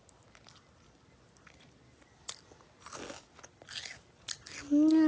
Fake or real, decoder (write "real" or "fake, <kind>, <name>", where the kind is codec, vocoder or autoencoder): real